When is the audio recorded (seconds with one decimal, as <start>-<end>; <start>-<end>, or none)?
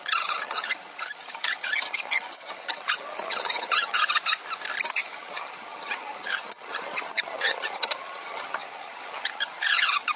4.4-4.9